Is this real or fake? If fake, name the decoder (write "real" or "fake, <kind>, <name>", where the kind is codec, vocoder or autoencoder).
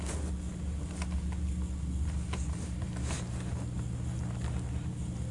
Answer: real